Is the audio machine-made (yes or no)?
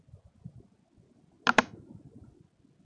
no